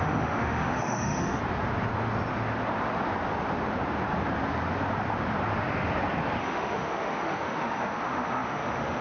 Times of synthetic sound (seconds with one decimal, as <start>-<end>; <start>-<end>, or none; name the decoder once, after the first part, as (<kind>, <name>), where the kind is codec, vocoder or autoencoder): 0.0-1.4 (autoencoder, DAC-VAE); 6.4-9.0

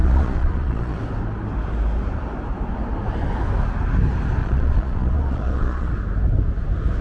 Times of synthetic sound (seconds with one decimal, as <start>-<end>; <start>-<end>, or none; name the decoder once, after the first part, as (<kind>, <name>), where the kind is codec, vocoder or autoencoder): 0.0-1.0 (vocoder, Vocos); 4.4-5.9

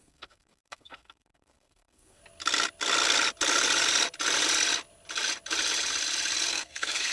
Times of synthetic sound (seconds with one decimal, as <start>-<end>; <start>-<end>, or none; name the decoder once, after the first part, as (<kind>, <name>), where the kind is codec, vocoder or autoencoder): 0.0-2.2 (codec, SNAC); 6.5-7.1

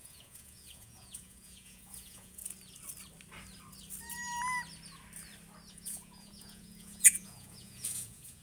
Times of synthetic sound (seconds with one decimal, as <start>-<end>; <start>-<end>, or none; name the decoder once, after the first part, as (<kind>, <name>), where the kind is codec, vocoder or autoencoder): 0.0-2.4 (vocoder, Vocos); 5.7-8.4

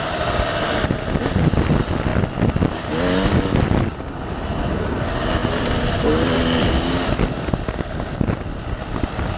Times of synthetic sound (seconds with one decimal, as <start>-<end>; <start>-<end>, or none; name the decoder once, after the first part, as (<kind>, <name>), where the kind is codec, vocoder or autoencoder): 2.1-2.6 (vocoder, BigVGAN v2); 5.4-7.5